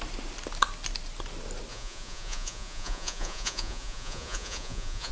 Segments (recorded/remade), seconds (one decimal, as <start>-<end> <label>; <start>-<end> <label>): 0.0-1.7 recorded; 1.7-5.1 remade